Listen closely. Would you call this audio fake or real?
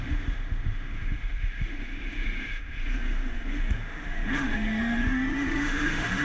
fake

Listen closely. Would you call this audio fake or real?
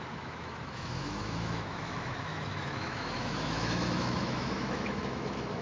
fake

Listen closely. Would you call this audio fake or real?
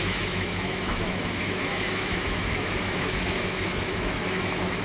fake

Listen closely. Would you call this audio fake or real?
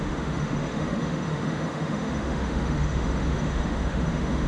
fake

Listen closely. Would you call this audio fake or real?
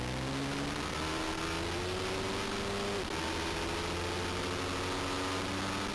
real